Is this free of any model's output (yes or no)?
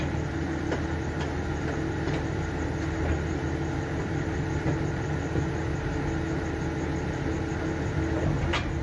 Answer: yes